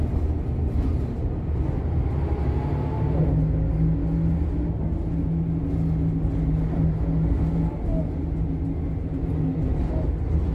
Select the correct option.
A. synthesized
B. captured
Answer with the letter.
B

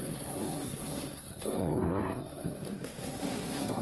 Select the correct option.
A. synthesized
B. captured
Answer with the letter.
A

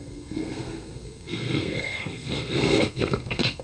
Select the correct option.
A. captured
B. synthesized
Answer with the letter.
B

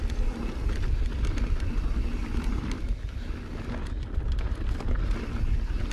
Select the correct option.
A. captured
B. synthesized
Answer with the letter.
A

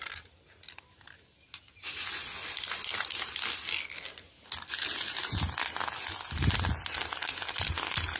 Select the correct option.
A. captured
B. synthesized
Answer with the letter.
A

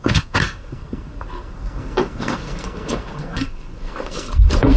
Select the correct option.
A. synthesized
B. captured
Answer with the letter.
A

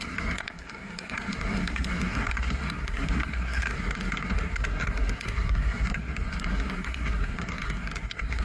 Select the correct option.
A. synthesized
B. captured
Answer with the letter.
A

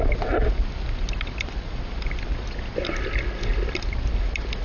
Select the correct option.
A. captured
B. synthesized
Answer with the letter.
A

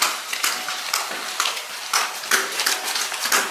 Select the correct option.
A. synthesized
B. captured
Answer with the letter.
B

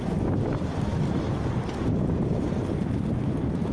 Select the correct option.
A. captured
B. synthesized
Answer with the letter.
A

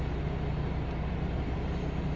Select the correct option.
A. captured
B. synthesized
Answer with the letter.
A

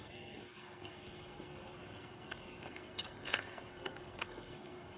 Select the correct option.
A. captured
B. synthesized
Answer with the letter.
B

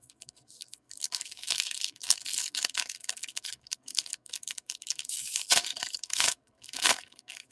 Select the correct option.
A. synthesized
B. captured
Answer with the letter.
A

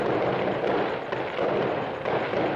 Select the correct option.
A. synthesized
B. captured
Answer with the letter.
B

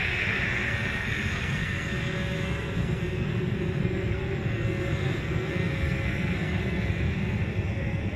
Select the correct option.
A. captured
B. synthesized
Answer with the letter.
B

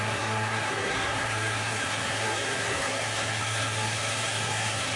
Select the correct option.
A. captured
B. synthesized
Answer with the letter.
B